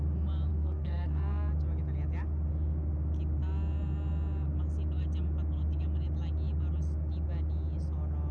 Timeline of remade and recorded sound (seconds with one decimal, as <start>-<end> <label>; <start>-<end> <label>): 0.0-0.5 recorded; 0.5-1.5 remade; 1.5-8.3 recorded